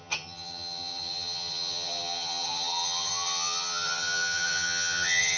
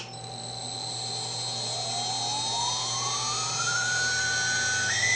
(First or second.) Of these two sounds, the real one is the second